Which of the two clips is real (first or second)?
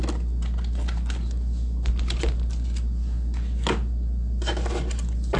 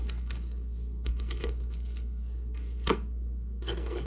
first